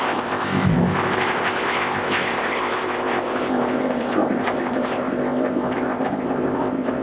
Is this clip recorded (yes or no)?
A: no